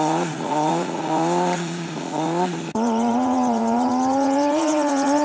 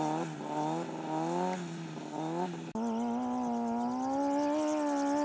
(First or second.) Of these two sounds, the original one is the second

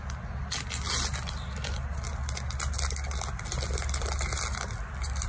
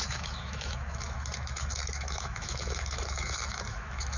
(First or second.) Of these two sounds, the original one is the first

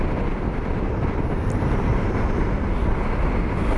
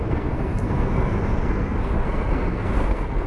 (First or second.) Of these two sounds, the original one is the first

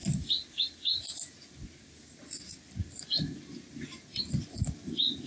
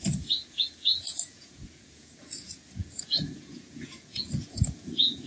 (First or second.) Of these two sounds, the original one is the first